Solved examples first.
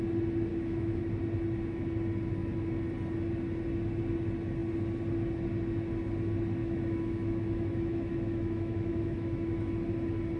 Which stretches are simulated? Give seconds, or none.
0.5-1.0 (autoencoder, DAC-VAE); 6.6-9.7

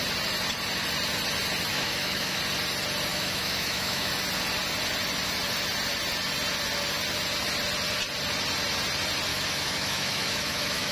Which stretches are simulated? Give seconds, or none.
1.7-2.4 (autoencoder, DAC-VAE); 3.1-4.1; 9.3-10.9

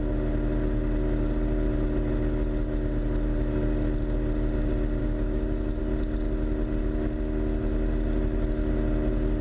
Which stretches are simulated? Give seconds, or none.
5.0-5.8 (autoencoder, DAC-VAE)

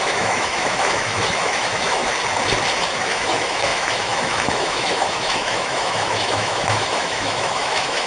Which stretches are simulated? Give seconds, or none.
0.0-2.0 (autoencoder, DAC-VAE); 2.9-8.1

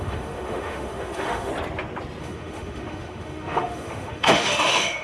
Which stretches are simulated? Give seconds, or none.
0.0-1.5 (autoencoder, DAC-VAE); 2.2-5.0